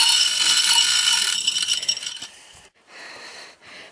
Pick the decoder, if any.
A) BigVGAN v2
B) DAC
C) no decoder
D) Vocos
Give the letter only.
A